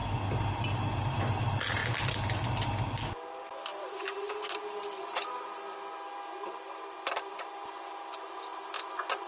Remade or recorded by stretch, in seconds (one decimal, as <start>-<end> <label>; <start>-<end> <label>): 0.0-9.3 recorded